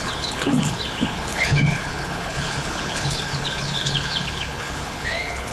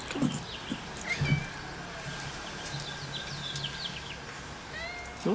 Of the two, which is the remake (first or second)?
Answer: first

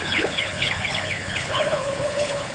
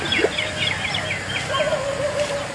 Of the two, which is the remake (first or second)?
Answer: first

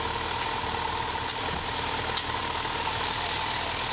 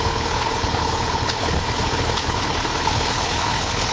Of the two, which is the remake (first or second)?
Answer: second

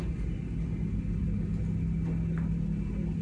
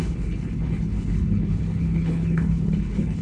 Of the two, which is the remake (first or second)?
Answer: second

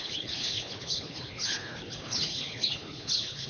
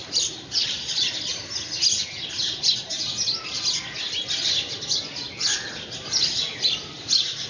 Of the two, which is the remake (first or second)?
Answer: first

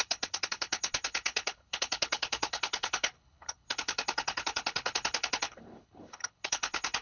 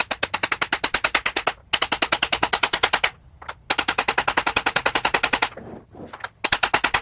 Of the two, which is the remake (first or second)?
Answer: first